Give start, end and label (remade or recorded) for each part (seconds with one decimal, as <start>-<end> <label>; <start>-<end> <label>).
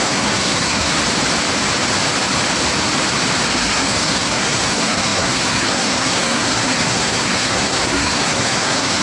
0.0-1.0 remade; 1.0-3.5 recorded; 3.5-9.0 remade